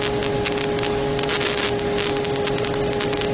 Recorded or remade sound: recorded